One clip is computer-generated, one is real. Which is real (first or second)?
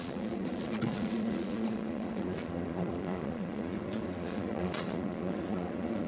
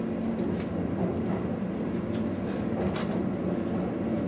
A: second